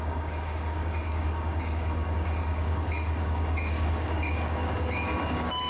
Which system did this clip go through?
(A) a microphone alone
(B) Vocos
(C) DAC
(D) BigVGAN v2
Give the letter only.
C